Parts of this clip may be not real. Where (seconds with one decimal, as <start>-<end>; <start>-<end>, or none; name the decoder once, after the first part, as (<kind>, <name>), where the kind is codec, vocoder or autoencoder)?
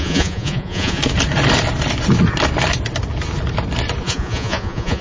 0.0-1.0 (vocoder, Vocos); 4.0-5.0